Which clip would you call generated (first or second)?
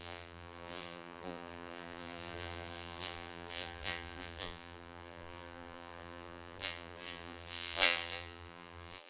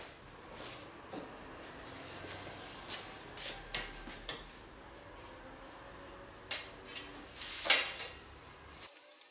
first